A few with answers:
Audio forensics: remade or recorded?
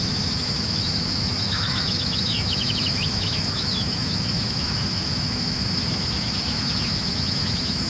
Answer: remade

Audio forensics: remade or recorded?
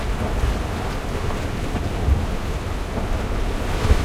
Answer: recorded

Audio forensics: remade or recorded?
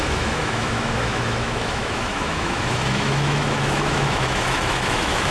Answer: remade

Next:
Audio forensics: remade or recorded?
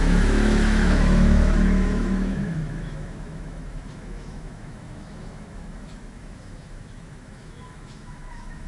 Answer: remade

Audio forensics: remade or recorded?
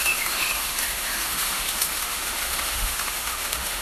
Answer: remade